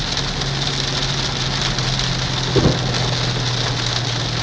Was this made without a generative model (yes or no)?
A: yes